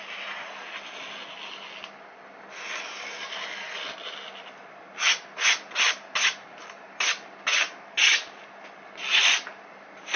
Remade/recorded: recorded